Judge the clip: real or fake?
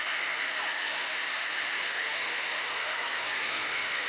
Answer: fake